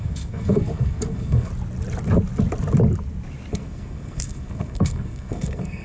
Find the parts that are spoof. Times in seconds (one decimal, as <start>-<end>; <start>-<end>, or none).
0.0-1.5; 3.5-5.8